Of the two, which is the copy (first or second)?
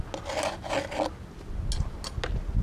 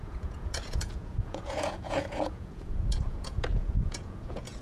second